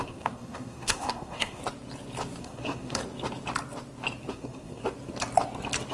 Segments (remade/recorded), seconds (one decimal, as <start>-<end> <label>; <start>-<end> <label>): 0.0-1.6 remade; 1.6-2.4 recorded; 2.4-3.0 remade; 3.0-4.3 recorded; 4.3-4.8 remade; 4.8-5.9 recorded